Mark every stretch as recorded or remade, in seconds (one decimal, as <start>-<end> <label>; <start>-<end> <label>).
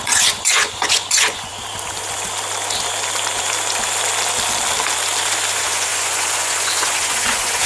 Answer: 0.0-1.5 remade; 1.5-5.5 recorded; 5.5-7.7 remade